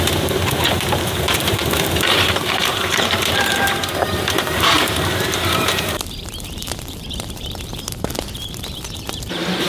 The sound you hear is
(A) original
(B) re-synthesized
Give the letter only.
B